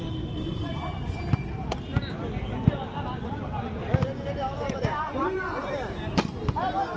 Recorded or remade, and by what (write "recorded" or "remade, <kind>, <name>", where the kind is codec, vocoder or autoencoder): recorded